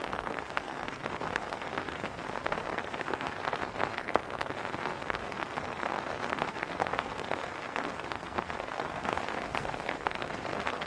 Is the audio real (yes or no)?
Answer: no